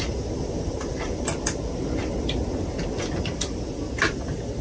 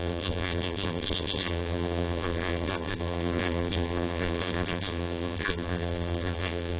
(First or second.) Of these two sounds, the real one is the first